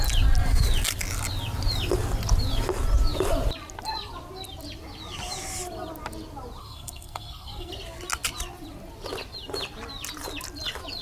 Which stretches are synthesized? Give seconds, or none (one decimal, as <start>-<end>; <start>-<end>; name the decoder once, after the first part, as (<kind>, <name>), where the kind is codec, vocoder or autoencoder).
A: 6.6-7.7 (codec, SNAC)